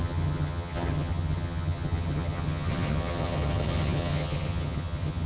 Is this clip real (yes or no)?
no